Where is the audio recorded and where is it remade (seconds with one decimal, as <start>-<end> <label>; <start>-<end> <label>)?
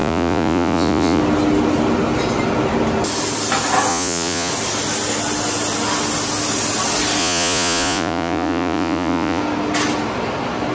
0.0-1.2 remade; 1.2-3.9 recorded; 3.9-4.5 remade; 4.5-7.2 recorded; 7.2-9.4 remade; 9.4-10.7 recorded